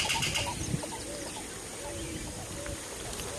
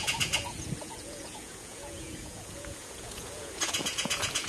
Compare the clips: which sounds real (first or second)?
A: first